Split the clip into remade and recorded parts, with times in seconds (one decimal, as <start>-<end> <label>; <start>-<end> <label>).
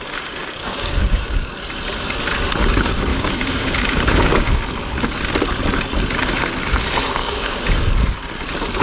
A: 0.0-0.4 recorded; 0.4-1.5 remade; 1.5-3.1 recorded; 3.1-4.6 remade; 4.6-7.2 recorded; 7.2-7.9 remade; 7.9-8.8 recorded